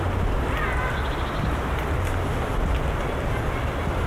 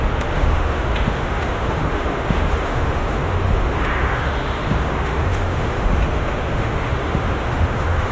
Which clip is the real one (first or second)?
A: first